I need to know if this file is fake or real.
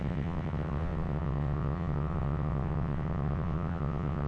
fake